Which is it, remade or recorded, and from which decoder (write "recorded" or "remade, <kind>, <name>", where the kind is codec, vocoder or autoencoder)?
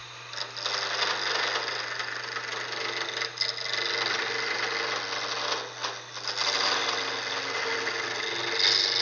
recorded